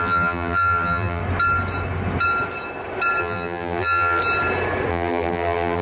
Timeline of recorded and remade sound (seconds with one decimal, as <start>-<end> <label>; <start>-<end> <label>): 0.0-1.2 remade; 1.2-3.2 recorded; 3.2-4.2 remade; 4.2-4.9 recorded; 4.9-5.8 remade